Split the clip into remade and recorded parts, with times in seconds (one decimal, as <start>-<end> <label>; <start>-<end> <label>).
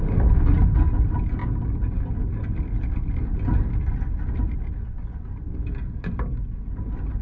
0.0-7.2 recorded